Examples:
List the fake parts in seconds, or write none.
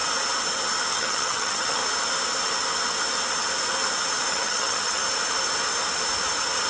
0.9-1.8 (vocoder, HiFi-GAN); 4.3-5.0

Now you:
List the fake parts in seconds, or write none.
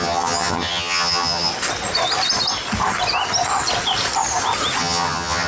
0.0-1.5 (vocoder, HiFi-GAN); 4.8-5.5